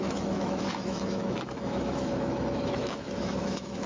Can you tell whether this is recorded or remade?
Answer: remade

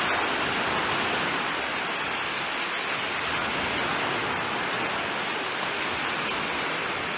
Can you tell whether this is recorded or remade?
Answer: recorded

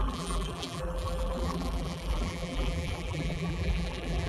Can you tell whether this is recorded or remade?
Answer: remade